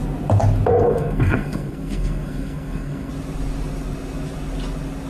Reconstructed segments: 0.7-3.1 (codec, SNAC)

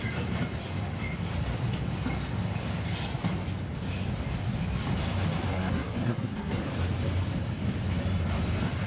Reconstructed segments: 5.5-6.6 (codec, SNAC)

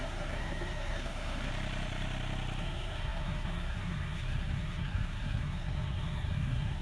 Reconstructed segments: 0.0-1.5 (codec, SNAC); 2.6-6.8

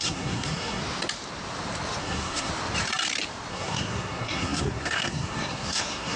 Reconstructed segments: 0.0-0.8 (codec, SNAC); 2.0-2.5; 3.5-6.2